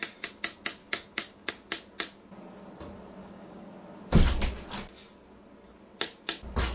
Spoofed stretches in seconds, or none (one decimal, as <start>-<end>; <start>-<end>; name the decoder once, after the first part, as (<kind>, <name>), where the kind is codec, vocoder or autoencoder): 0.8-1.5 (codec, DAC); 3.2-3.7